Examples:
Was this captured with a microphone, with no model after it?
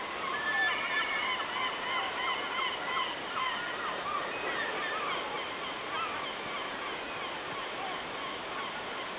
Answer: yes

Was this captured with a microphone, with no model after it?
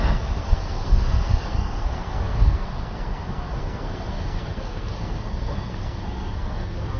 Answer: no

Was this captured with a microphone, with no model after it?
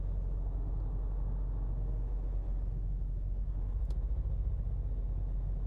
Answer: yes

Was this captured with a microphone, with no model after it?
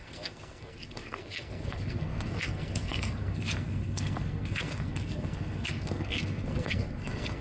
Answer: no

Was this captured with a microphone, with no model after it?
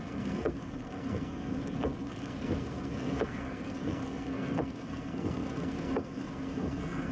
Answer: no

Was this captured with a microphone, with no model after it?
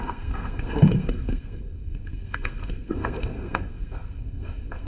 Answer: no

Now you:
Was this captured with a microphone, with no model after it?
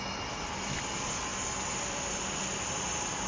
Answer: yes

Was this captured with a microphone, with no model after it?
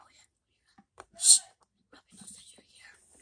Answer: yes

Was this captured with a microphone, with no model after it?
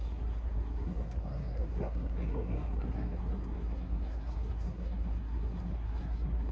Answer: no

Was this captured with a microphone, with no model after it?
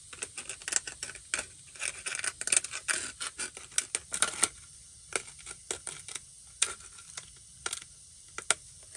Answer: yes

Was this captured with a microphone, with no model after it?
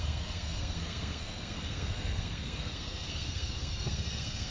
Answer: no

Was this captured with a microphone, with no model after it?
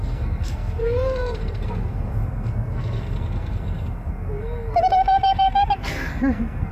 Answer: no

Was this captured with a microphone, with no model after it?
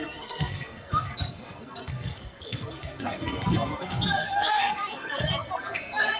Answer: no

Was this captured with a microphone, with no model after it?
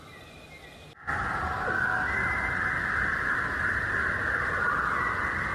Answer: yes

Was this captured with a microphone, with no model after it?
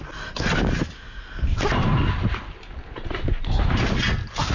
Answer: yes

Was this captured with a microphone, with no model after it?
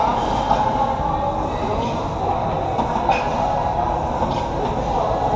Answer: yes